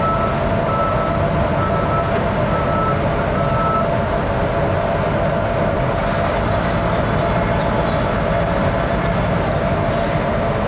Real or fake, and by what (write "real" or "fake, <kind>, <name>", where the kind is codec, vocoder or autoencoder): real